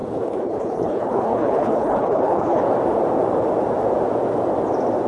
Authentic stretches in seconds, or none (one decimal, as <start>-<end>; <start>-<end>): 2.6-5.1